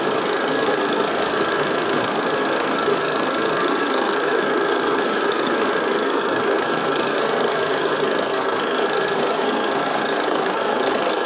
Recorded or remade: remade